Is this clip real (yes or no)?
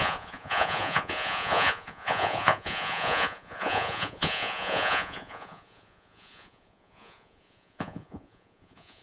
no